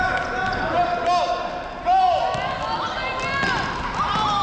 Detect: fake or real real